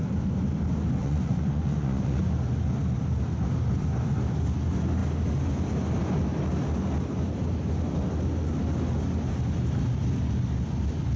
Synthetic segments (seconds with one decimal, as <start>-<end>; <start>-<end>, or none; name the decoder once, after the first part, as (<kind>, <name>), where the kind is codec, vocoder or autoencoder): 1.0-2.2 (vocoder, Vocos)